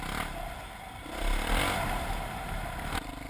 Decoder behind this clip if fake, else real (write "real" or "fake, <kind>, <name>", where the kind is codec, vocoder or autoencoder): real